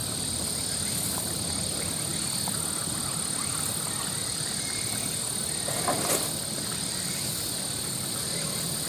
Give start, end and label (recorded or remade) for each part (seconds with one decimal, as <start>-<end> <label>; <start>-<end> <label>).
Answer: 0.0-4.2 recorded; 4.2-5.2 remade; 5.2-8.9 recorded